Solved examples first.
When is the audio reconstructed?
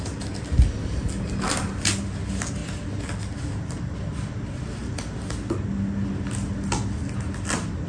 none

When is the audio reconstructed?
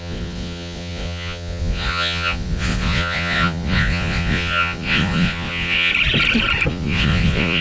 0.0-5.9 (vocoder, Vocos); 6.7-7.6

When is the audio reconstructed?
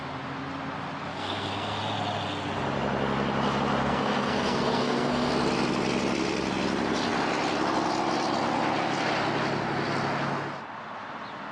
1.1-1.8 (codec, SNAC); 3.8-5.3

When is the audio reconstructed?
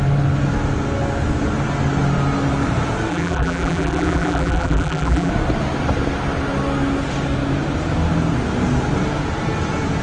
3.1-5.3 (vocoder, BigVGAN v2)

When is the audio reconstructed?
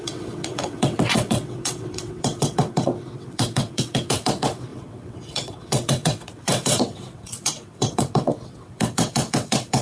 0.0-9.8 (vocoder, WaveNeXt)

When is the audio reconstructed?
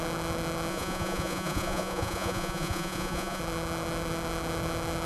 0.7-3.4 (vocoder, Vocos)